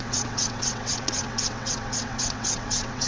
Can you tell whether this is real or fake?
fake